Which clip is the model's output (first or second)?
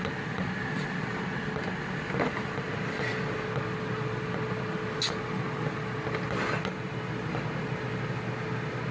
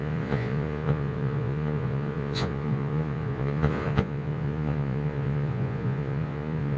second